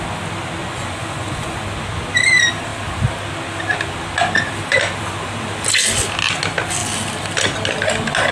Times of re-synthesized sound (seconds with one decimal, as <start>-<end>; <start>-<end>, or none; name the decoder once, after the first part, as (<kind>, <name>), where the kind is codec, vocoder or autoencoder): 0.6-1.6 (vocoder, Vocos)